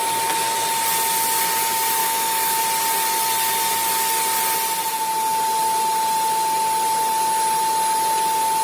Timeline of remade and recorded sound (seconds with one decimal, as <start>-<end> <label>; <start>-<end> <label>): 0.0-2.0 recorded; 2.0-2.6 remade; 2.6-8.6 recorded